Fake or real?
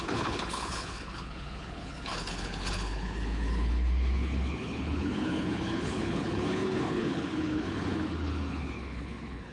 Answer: fake